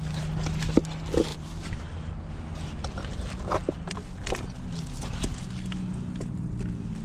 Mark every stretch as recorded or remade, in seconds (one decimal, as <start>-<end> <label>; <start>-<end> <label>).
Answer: 0.0-1.3 recorded; 1.3-1.8 remade; 1.8-3.6 recorded; 3.6-4.4 remade; 4.4-7.0 recorded